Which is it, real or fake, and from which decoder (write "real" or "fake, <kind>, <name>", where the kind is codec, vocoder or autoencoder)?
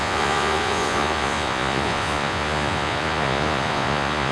fake, vocoder, Vocos